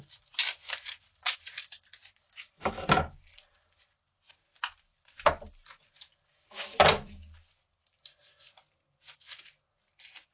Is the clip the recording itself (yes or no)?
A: yes